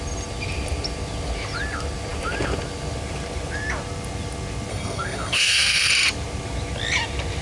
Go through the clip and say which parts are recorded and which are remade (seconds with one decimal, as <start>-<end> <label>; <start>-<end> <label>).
0.0-4.7 recorded; 4.7-5.9 remade; 5.9-7.4 recorded